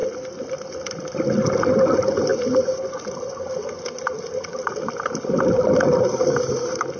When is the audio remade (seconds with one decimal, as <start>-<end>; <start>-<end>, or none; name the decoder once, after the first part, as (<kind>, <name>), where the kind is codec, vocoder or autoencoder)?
none